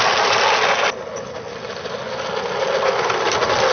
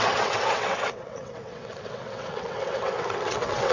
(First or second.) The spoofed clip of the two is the second